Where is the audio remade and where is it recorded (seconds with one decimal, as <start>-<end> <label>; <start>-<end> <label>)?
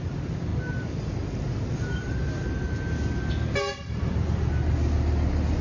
0.0-5.6 recorded